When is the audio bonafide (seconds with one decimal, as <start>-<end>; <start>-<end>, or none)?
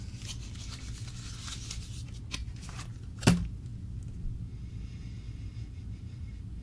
0.0-2.4; 2.9-6.6